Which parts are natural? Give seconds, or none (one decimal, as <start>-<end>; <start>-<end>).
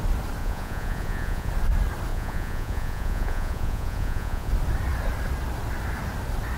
0.0-0.4; 1.5-2.1; 4.5-6.6